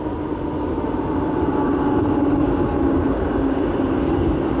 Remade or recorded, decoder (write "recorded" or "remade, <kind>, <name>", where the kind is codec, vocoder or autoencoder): recorded